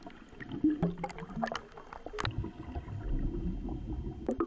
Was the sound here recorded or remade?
recorded